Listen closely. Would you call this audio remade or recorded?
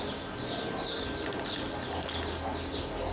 recorded